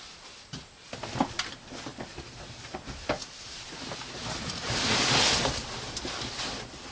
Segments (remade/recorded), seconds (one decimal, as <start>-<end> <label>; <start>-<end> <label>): 0.0-1.9 recorded; 1.9-6.0 remade; 6.0-6.9 recorded